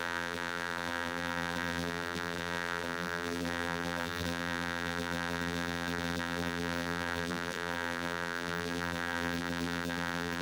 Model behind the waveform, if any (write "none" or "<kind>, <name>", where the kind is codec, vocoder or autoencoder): vocoder, BigVGAN v2